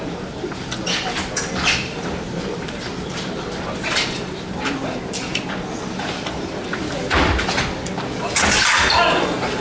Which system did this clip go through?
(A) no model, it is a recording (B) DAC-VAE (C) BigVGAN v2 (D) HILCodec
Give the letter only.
A